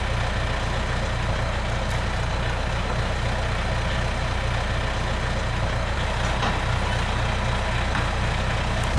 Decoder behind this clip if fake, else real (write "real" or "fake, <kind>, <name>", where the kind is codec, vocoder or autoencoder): real